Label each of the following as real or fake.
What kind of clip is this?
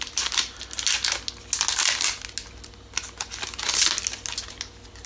real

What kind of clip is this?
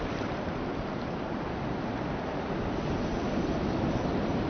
real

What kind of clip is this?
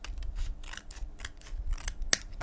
real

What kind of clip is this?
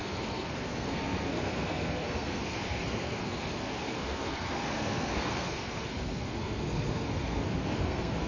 fake